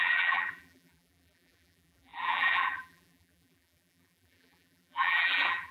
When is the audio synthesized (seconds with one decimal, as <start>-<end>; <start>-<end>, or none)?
0.0-5.7